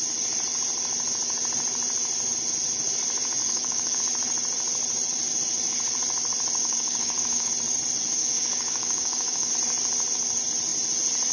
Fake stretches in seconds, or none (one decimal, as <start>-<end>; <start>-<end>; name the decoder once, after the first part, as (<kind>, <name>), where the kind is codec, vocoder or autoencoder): 3.4-4.0 (codec, DAC); 6.6-7.5; 8.2-9.5